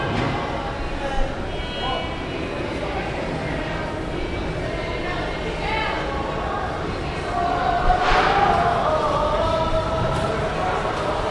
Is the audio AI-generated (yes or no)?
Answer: no